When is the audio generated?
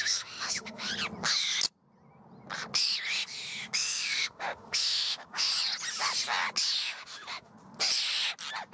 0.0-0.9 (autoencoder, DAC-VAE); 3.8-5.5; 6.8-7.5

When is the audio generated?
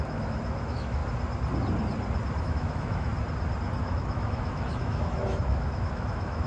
0.0-1.0 (autoencoder, DAC-VAE); 2.4-3.1; 3.8-6.5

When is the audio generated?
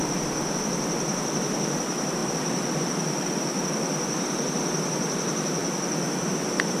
none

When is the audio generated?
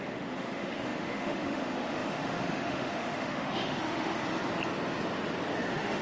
0.0-4.2 (autoencoder, DAC-VAE); 5.6-6.0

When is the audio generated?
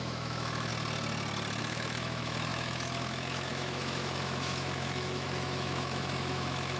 0.0-0.7 (autoencoder, DAC-VAE); 1.6-6.8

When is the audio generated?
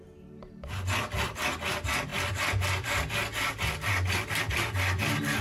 none